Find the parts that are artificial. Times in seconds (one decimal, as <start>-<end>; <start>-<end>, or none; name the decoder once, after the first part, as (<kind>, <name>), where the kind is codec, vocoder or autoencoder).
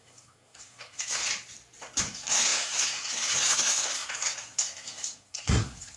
0.0-1.2 (codec, SNAC); 2.0-6.0